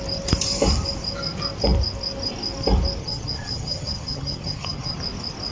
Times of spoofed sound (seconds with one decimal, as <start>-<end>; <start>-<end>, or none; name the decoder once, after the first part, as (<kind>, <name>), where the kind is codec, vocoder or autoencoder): 3.0-5.0 (vocoder, HiFi-GAN)